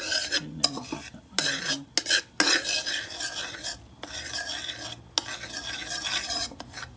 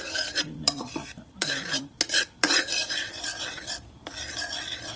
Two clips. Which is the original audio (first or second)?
first